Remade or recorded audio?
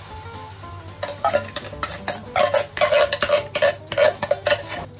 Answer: recorded